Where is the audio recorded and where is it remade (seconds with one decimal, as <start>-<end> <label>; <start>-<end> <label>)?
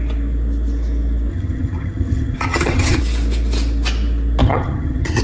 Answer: 0.0-1.3 recorded; 1.3-3.0 remade; 3.0-4.4 recorded; 4.4-5.2 remade